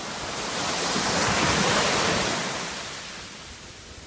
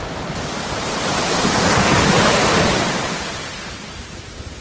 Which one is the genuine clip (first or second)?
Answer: first